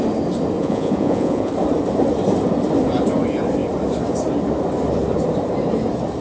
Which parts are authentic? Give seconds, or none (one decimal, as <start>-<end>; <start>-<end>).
0.0-0.6; 1.5-6.2